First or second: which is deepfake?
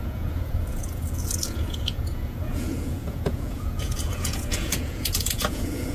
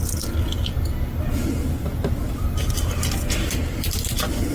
first